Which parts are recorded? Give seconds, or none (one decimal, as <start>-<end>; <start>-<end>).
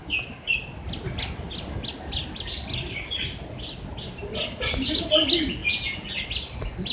0.0-5.6; 6.1-6.9